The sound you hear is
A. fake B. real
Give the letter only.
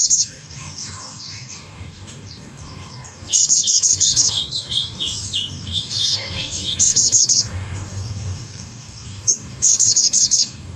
A